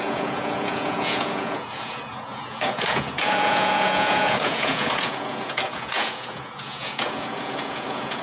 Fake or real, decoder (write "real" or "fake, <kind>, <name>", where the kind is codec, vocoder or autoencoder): fake, vocoder, Vocos